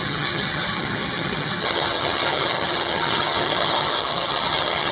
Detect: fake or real fake